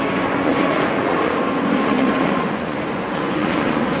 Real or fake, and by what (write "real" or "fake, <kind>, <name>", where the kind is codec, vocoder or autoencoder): fake, vocoder, Vocos